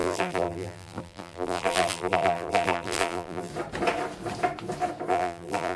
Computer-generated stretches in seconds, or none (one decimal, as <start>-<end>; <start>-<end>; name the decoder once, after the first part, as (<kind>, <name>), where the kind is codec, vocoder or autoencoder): 0.0-3.5 (vocoder, BigVGAN v2); 5.1-5.8